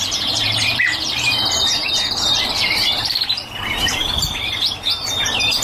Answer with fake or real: fake